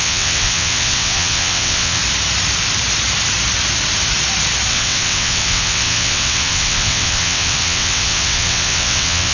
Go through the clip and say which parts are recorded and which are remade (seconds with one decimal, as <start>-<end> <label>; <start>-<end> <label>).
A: 0.0-2.0 remade; 2.0-4.7 recorded; 4.7-9.3 remade